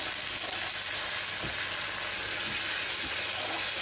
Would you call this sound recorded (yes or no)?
yes